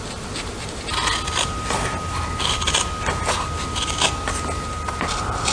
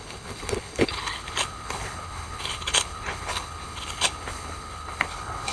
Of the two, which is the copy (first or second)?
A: second